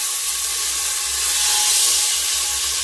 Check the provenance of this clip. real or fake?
real